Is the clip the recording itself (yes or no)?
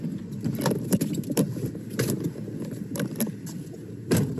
no